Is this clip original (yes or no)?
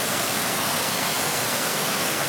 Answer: no